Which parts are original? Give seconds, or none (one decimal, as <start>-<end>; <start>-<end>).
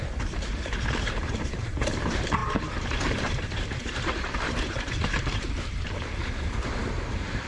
none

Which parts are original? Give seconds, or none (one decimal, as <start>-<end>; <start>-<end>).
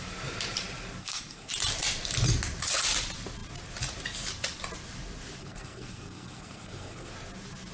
0.0-1.0; 1.5-5.4; 7.1-7.7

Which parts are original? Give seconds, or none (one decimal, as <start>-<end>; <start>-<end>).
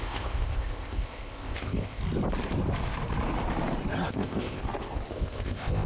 2.0-4.1; 4.6-5.1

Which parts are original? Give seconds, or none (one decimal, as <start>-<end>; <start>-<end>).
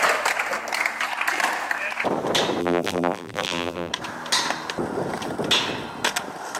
0.0-2.6; 3.9-6.6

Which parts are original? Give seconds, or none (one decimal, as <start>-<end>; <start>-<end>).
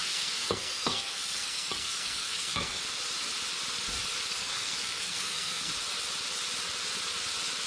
2.8-4.3; 5.7-7.7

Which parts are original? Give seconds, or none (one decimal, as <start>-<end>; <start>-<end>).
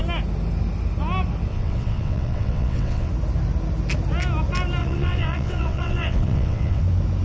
0.0-1.5; 3.1-4.8; 6.8-7.2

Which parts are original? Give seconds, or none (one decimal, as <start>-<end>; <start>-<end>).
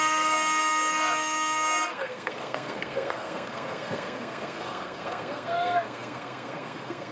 none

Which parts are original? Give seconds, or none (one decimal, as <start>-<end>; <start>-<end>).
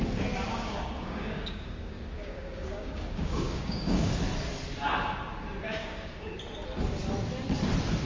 0.0-0.5; 4.2-5.8; 6.4-8.1